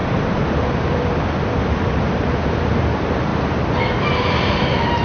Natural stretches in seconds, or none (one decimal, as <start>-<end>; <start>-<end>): 0.0-2.8; 3.3-4.0